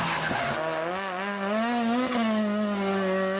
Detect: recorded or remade recorded